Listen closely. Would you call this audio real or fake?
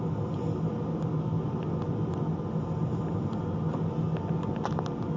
real